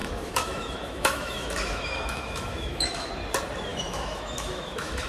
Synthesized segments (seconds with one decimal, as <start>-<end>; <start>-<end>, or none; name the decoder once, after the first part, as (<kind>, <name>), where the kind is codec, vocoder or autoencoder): 0.0-3.1 (autoencoder, DAC-VAE); 3.7-5.1